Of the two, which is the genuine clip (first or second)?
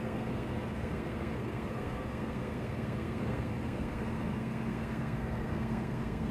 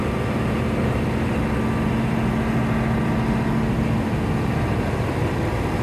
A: second